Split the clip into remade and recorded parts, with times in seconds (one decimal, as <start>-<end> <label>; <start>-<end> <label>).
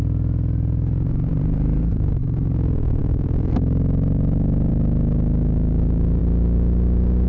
0.0-1.3 recorded; 1.3-2.1 remade; 2.1-3.0 recorded; 3.0-4.7 remade; 4.7-7.3 recorded